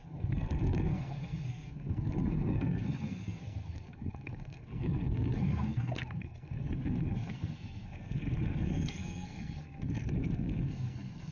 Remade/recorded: remade